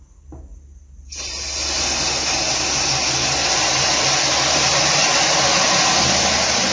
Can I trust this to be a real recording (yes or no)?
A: yes